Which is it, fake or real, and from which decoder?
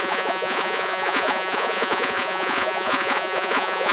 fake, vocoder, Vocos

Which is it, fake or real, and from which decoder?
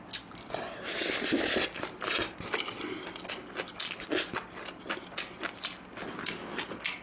real